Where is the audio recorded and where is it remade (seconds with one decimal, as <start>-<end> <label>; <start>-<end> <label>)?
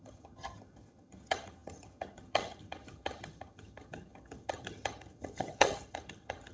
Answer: 0.0-6.5 remade